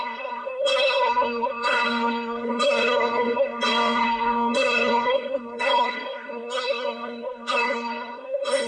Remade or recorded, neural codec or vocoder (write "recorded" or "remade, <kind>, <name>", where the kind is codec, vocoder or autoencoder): remade, codec, SNAC